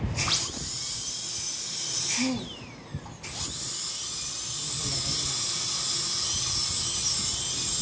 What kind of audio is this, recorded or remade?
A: recorded